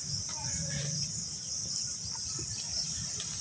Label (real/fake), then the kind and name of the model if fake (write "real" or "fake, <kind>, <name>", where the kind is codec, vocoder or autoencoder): real